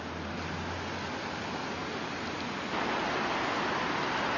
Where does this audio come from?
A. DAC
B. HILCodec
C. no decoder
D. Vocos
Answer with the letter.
C